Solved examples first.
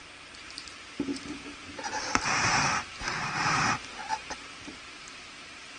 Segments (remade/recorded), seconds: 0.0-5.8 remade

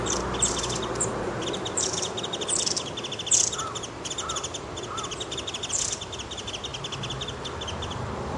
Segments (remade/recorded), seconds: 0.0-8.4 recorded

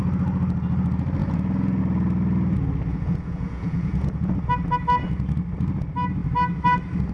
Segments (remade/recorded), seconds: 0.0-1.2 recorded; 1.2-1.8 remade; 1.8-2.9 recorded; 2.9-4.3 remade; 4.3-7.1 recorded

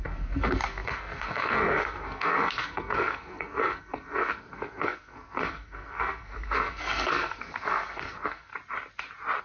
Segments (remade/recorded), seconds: 0.0-8.5 remade; 8.5-9.4 recorded

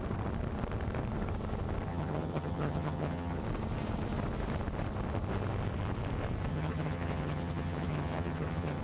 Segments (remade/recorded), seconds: 0.0-1.9 recorded; 1.9-3.4 remade; 3.4-6.5 recorded; 6.5-8.8 remade

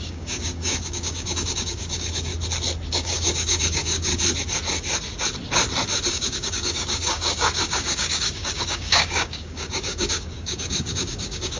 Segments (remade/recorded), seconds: 0.0-2.3 remade; 2.3-2.9 recorded; 2.9-4.1 remade; 4.1-6.1 recorded; 6.1-11.6 remade

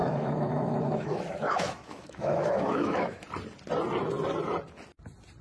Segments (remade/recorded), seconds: 0.0-3.2 remade; 3.2-5.4 recorded

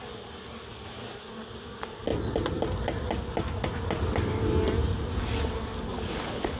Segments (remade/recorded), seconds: 0.0-6.6 recorded